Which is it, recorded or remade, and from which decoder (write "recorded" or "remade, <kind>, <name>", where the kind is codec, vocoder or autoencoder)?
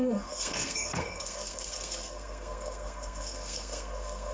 remade, codec, SNAC